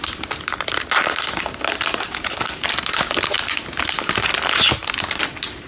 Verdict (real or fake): real